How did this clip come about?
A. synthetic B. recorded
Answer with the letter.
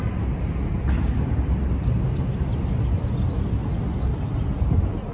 B